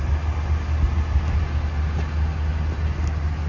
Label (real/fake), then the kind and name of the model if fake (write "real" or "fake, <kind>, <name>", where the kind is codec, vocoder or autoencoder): real